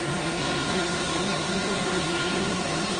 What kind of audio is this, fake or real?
fake